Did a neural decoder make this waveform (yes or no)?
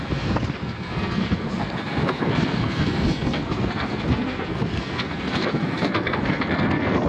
yes